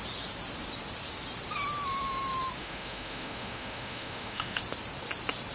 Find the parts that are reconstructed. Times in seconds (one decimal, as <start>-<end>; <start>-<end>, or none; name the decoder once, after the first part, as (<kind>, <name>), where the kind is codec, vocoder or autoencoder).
2.6-4.6 (autoencoder, DAC-VAE)